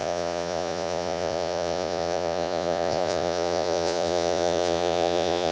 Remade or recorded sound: remade